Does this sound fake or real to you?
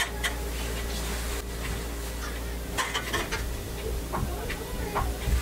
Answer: real